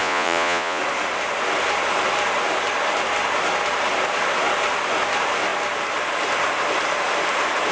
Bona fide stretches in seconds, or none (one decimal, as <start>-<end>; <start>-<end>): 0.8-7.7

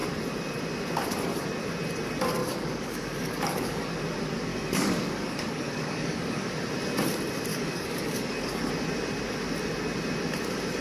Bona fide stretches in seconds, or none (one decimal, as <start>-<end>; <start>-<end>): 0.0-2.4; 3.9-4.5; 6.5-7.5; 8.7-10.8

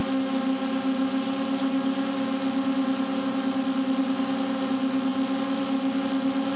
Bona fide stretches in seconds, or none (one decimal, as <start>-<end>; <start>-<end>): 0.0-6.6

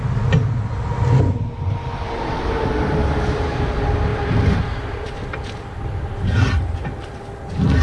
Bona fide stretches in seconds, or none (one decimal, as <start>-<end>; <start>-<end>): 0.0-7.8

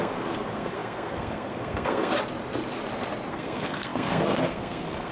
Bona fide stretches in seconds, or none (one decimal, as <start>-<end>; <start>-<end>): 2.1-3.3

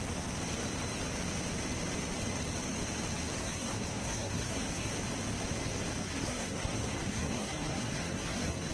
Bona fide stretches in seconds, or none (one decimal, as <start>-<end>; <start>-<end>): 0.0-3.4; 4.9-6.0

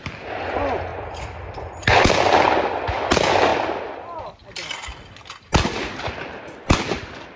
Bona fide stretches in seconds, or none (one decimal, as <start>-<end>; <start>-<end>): 0.0-7.4

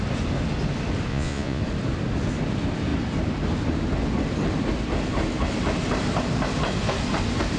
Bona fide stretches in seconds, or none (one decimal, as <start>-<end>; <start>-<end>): 0.0-1.1; 1.6-7.6